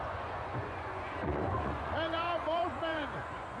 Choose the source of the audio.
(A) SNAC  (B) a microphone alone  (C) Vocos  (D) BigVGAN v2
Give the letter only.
C